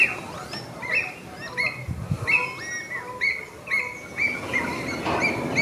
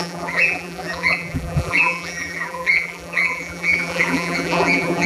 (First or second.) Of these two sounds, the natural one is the first